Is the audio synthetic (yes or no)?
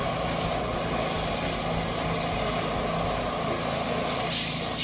no